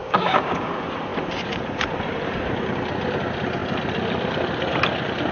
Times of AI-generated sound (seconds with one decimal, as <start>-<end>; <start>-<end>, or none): 0.0-0.7